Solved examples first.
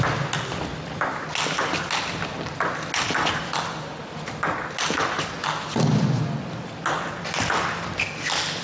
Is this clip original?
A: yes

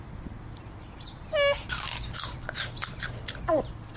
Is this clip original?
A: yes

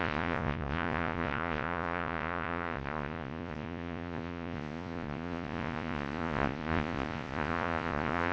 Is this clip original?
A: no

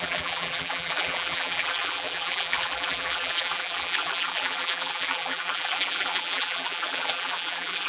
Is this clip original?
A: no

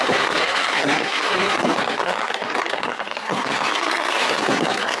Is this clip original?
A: no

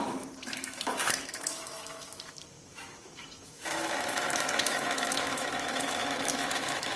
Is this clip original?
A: no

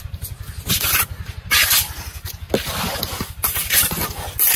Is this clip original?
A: yes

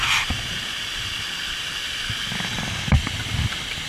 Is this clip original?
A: yes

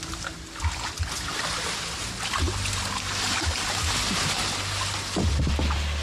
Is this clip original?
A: yes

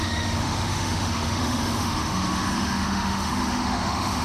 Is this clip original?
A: no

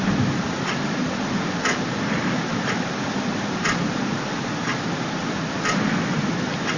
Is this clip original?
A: yes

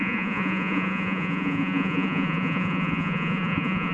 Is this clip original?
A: no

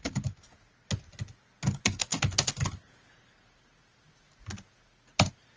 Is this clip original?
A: yes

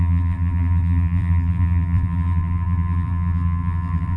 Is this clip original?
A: no